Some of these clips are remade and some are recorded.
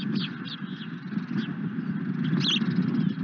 recorded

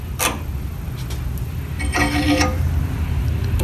recorded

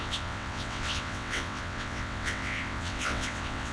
remade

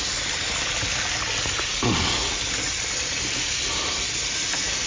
recorded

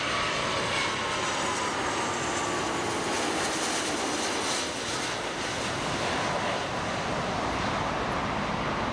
recorded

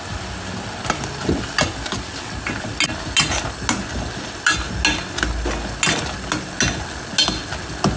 recorded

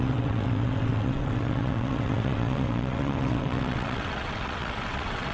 remade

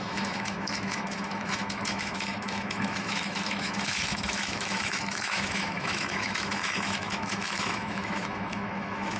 remade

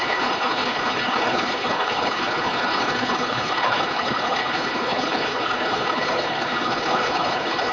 remade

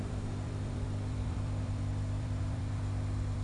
remade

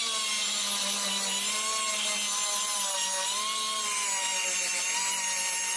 recorded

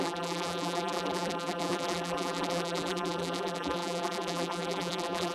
remade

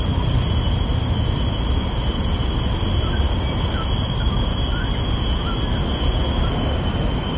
recorded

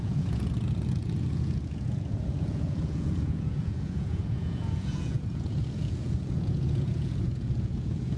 remade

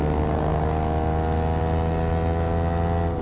recorded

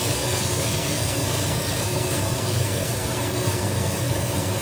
remade